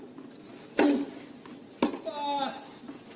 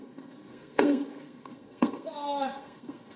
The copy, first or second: second